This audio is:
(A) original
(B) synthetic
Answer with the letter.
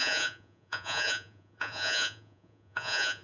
B